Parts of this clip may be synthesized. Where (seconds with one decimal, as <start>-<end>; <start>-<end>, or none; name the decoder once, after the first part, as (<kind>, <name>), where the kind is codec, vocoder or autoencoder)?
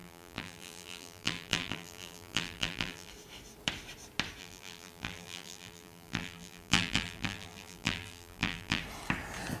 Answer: 0.0-3.1 (vocoder, BigVGAN v2); 4.4-8.8